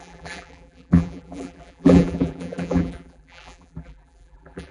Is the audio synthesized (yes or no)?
yes